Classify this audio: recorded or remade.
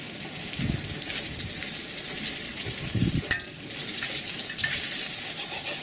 remade